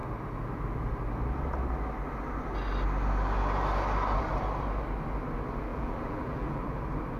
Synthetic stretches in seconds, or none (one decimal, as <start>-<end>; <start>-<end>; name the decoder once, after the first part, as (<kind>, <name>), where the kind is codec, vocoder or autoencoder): 5.7-6.8 (vocoder, BigVGAN v2)